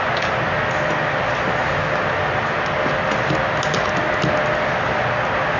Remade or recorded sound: recorded